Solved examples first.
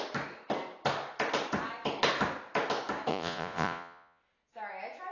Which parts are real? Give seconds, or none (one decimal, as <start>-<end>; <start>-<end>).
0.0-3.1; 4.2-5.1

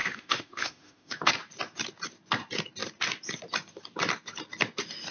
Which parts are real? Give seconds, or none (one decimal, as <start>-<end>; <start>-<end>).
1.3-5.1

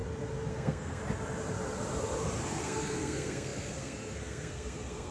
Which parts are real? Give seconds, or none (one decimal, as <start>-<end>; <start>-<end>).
0.0-0.5; 1.0-2.6